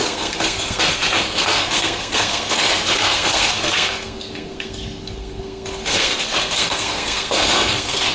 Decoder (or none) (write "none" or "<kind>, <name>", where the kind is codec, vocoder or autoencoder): codec, SNAC